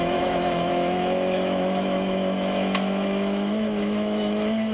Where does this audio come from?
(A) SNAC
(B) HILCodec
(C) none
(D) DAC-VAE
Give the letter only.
D